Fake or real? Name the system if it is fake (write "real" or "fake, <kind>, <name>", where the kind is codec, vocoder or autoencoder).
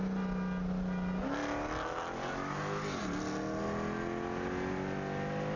real